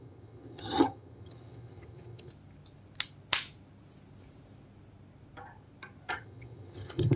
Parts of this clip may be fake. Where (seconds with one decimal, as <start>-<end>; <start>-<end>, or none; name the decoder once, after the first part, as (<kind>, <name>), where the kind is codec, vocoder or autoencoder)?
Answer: 0.0-2.3 (vocoder, HiFi-GAN); 6.1-7.2